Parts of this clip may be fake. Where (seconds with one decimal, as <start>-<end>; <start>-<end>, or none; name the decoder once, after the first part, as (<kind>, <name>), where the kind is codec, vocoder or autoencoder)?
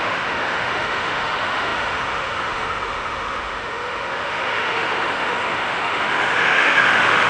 0.0-7.3 (autoencoder, DAC-VAE)